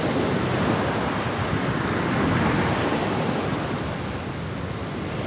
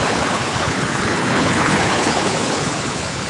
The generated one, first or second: second